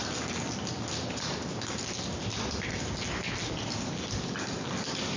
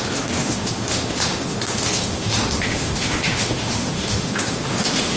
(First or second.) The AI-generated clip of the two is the second